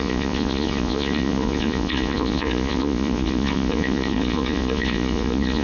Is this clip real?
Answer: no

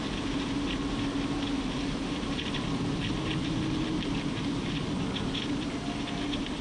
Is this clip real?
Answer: yes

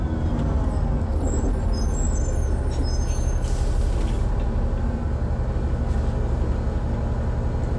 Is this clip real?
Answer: yes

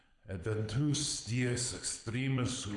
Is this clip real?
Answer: no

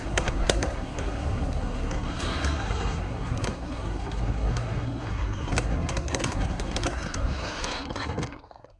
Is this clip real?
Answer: no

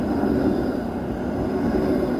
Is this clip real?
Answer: yes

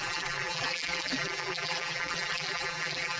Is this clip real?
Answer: no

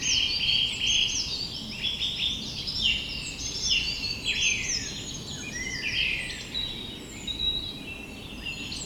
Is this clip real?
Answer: yes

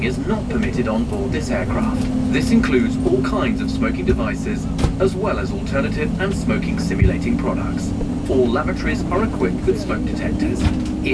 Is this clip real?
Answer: yes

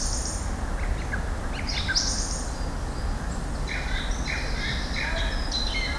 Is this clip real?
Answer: yes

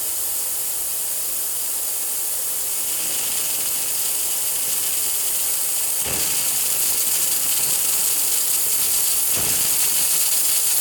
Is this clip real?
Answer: yes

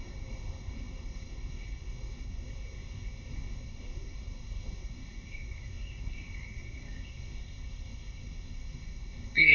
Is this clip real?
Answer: no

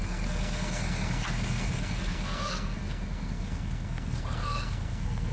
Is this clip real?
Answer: no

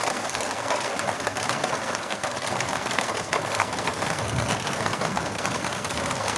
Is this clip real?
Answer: no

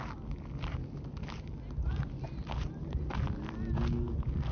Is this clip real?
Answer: yes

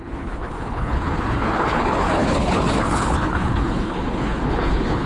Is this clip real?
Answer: no